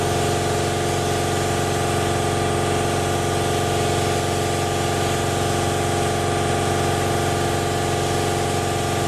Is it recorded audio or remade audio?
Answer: recorded